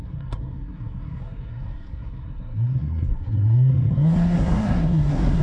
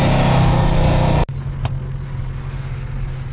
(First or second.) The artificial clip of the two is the first